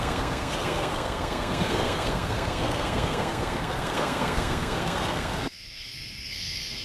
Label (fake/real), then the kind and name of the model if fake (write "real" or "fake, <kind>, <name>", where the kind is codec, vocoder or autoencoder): fake, codec, SNAC